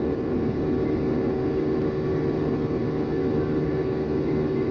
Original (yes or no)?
yes